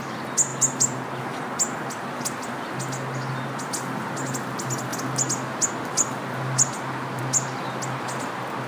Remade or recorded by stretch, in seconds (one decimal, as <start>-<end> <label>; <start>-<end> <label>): 0.0-8.7 recorded